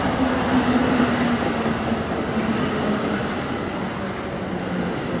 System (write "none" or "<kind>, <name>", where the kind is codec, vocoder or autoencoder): none